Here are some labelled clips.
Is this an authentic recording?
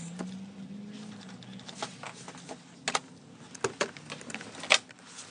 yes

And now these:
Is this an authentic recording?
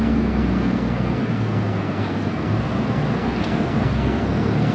no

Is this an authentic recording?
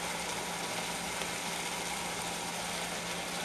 yes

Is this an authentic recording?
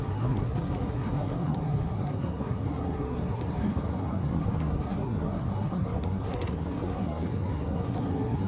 no